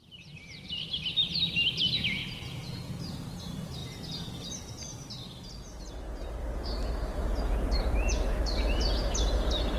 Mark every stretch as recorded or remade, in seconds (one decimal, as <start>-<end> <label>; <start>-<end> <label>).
0.0-2.2 recorded; 2.2-3.0 remade; 3.0-3.8 recorded; 3.8-4.3 remade; 4.3-7.1 recorded; 7.1-8.4 remade; 8.4-9.8 recorded